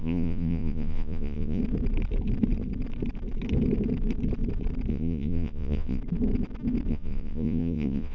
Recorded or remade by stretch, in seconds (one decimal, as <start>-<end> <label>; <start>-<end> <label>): 0.0-1.6 remade; 1.6-4.9 recorded; 4.9-6.0 remade; 6.0-6.9 recorded; 6.9-8.1 remade